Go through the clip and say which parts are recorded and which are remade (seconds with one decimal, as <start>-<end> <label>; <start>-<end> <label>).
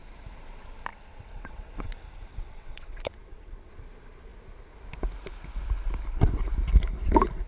0.0-0.9 recorded; 0.9-3.7 remade; 3.7-7.5 recorded